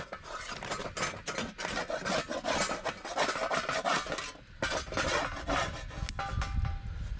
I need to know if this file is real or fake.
real